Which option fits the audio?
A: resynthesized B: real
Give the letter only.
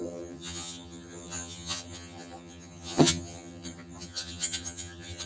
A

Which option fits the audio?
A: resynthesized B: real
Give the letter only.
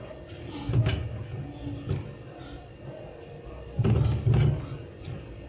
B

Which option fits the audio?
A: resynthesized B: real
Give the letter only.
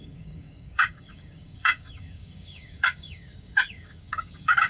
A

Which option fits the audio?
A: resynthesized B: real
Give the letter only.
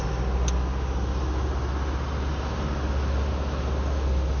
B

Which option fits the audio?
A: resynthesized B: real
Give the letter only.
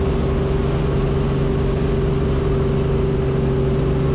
B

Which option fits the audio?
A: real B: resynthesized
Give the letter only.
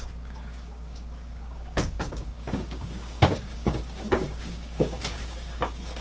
B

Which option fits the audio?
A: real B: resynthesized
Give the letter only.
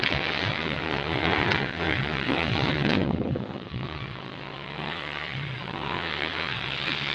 B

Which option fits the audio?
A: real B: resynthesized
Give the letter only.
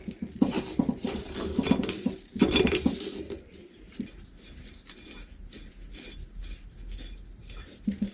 A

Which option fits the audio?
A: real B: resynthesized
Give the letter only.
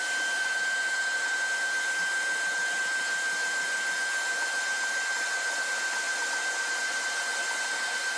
A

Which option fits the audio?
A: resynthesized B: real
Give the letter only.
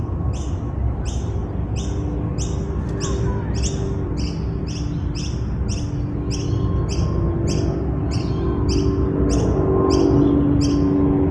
B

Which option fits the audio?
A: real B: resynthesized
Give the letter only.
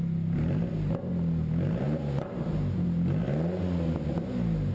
A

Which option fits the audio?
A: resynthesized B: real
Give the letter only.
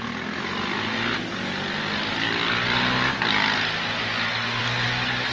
B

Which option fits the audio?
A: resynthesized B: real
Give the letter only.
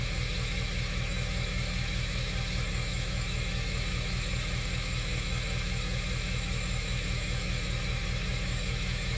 A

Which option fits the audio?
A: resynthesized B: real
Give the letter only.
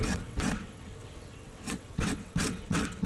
A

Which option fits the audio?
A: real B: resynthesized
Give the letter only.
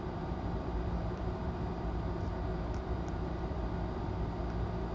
B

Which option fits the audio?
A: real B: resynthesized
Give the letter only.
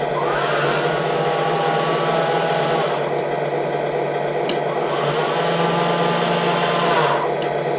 A